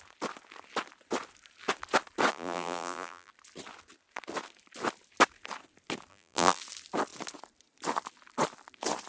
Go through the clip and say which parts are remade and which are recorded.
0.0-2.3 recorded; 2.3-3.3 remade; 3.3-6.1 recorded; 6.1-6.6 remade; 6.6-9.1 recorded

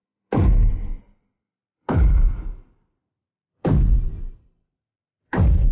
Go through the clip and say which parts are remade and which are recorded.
0.0-1.0 recorded; 1.0-4.1 remade; 4.1-5.2 recorded; 5.2-5.7 remade